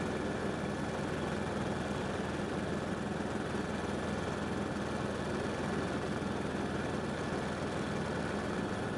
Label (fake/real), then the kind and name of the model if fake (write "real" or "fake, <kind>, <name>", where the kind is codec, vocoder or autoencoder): real